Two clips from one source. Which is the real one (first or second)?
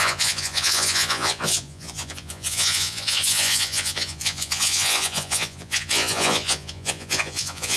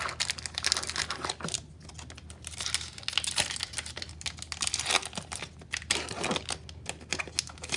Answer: second